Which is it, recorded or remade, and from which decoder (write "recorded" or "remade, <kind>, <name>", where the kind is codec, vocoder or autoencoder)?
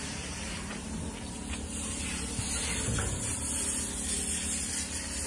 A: remade, vocoder, BigVGAN v2